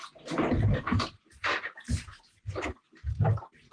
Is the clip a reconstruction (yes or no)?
no